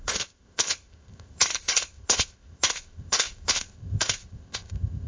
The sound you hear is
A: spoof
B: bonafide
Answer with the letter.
A